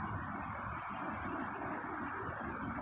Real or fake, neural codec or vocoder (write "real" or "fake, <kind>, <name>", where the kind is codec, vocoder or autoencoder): real